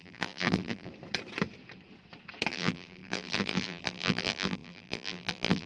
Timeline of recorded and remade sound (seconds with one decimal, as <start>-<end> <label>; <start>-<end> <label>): 0.0-0.9 remade; 0.9-2.5 recorded; 2.5-5.7 remade